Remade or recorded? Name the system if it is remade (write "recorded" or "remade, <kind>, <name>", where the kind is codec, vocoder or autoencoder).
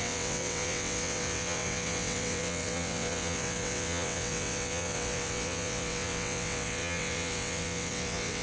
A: remade, vocoder, WaveNeXt